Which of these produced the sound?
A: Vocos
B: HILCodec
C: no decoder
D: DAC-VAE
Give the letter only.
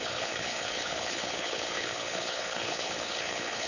B